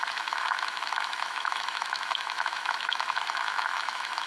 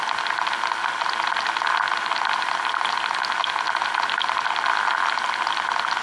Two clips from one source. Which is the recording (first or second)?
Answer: second